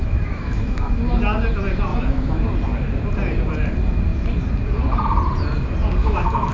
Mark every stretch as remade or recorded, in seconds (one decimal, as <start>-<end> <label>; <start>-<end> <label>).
0.0-1.0 remade; 1.0-1.9 recorded; 1.9-2.4 remade; 2.4-6.0 recorded; 6.0-6.5 remade